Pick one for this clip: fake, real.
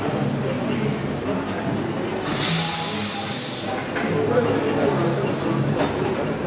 real